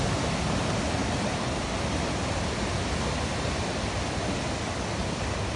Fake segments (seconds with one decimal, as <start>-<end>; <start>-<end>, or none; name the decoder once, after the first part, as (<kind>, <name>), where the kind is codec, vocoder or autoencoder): none